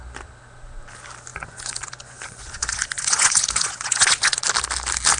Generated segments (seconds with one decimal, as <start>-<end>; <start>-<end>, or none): 1.3-4.4